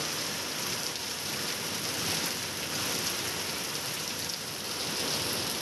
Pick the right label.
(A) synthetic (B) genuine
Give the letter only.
A